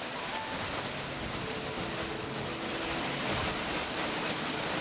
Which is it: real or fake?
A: real